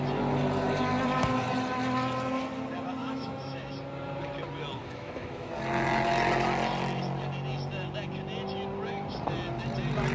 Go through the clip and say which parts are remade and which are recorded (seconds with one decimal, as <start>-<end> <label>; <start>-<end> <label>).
0.0-3.0 recorded; 3.0-3.7 remade; 3.7-4.8 recorded; 4.8-5.5 remade; 5.5-10.1 recorded